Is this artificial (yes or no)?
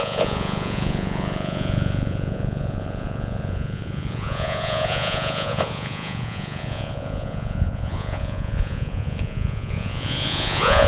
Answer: yes